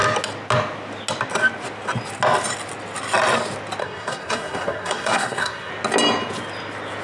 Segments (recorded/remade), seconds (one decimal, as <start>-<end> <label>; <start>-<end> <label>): 0.0-3.8 recorded; 3.8-5.7 remade; 5.7-7.0 recorded